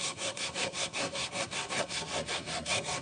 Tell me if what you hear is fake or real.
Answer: fake